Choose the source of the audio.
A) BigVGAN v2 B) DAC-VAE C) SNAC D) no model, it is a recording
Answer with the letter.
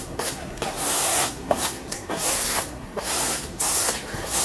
C